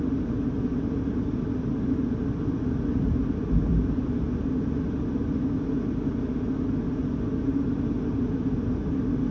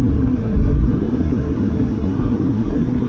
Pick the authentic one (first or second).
first